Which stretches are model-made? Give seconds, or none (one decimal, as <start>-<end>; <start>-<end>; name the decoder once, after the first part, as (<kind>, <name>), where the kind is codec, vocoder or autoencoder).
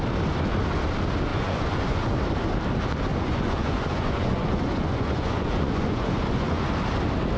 1.3-2.0 (vocoder, Vocos); 3.1-6.7